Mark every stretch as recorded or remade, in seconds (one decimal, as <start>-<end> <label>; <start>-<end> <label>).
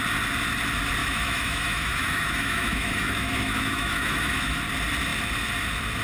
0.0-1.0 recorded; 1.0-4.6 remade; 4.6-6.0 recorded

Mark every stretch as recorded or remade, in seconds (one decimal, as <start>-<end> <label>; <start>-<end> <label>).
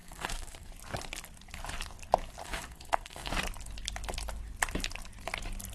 0.0-0.7 remade; 0.7-2.4 recorded; 2.4-3.3 remade; 3.3-5.7 recorded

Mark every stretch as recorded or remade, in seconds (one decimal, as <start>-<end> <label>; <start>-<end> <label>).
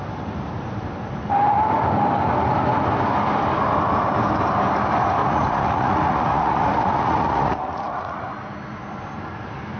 0.0-5.2 recorded; 5.2-8.3 remade; 8.3-9.8 recorded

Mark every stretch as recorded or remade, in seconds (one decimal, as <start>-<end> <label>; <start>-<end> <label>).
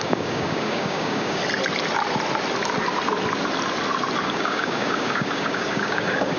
0.0-1.4 remade; 1.4-4.2 recorded; 4.2-6.4 remade